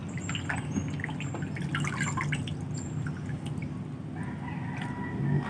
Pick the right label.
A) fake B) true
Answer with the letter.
B